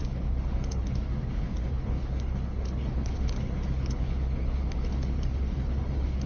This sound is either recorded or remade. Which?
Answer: remade